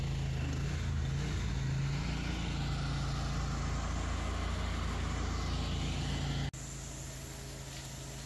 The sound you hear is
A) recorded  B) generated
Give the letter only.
A